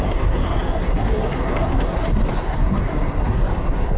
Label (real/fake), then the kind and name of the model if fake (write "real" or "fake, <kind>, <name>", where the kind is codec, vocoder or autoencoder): fake, codec, SNAC